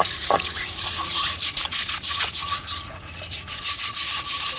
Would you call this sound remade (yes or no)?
yes